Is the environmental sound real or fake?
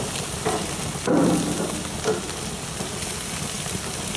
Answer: real